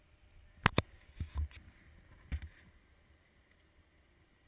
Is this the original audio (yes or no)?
yes